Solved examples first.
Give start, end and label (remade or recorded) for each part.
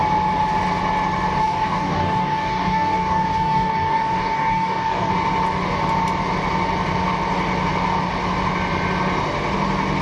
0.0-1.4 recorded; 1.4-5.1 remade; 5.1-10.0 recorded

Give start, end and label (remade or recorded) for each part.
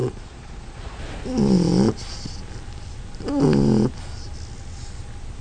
0.0-1.0 remade; 1.0-5.4 recorded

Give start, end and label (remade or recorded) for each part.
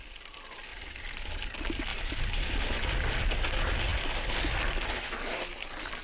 0.0-0.7 recorded; 0.7-1.3 remade; 1.3-1.9 recorded; 1.9-2.4 remade; 2.4-6.0 recorded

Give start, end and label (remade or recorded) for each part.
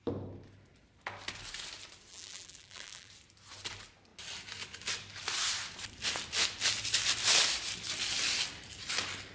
0.0-2.1 recorded; 2.1-3.1 remade; 3.1-9.3 recorded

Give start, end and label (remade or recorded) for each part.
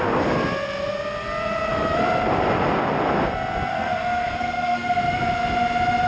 0.0-3.7 recorded; 3.7-5.2 remade; 5.2-6.1 recorded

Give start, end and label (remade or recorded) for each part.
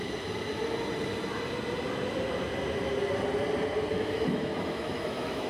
0.0-3.9 recorded; 3.9-5.5 remade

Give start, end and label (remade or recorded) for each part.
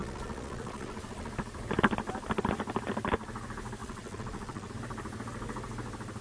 0.0-1.3 remade; 1.3-3.8 recorded; 3.8-4.7 remade; 4.7-6.2 recorded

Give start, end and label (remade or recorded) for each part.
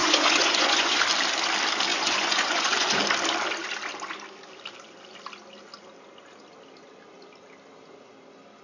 0.0-1.0 remade; 1.0-1.9 recorded; 1.9-3.0 remade; 3.0-8.6 recorded